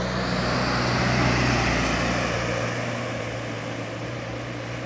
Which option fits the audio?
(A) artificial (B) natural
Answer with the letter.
B